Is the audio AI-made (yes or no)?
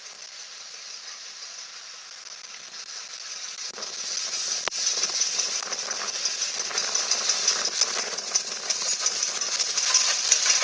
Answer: no